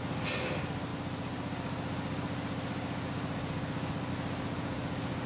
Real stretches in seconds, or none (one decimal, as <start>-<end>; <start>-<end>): 0.0-5.3